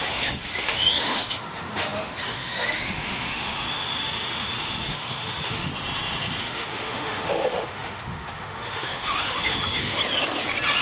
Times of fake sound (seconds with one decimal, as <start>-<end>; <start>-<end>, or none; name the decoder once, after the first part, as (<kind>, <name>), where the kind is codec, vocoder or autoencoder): 0.0-5.7 (autoencoder, DAC-VAE); 6.4-10.0